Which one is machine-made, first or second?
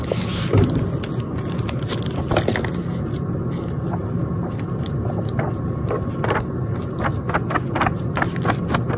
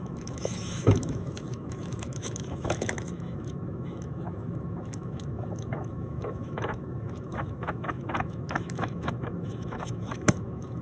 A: second